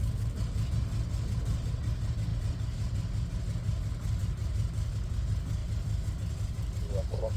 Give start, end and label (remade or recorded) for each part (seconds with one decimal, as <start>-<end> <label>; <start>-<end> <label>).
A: 0.0-7.4 recorded